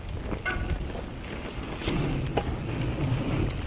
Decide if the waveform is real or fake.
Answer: real